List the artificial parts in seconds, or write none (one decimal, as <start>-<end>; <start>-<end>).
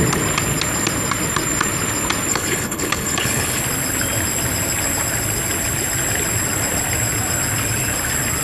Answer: 2.3-3.6